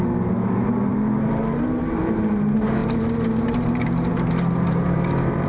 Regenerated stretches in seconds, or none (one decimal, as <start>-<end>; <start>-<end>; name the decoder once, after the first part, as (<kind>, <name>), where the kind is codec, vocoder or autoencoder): 0.0-5.5 (vocoder, BigVGAN v2)